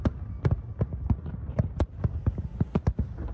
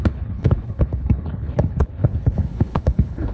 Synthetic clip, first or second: second